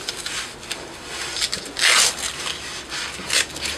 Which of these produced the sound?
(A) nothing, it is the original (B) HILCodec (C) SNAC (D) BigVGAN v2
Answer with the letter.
A